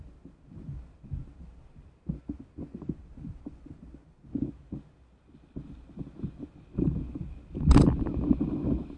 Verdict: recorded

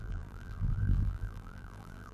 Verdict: remade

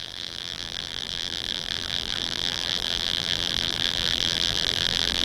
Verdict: remade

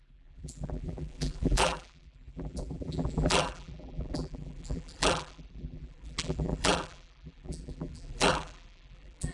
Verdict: remade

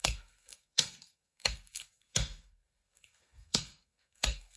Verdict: remade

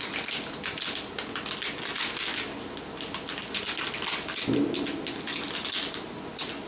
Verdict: recorded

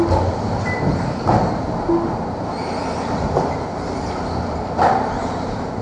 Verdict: recorded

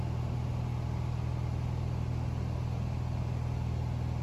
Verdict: recorded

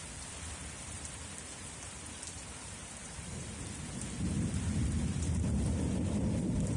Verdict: remade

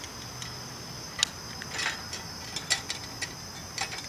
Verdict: recorded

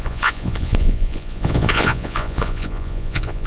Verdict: remade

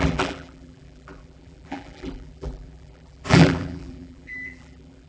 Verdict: remade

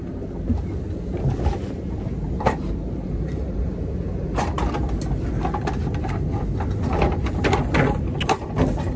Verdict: recorded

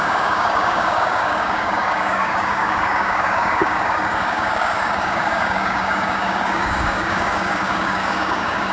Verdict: remade